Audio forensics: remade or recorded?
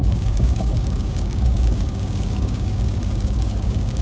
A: remade